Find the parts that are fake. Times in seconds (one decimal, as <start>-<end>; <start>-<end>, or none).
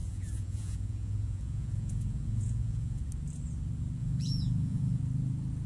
0.0-3.0; 4.0-5.0